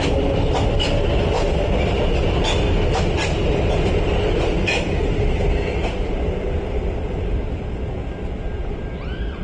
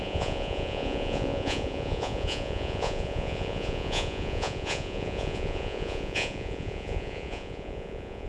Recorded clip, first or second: first